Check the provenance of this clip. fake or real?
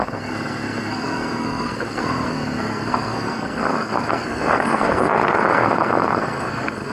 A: fake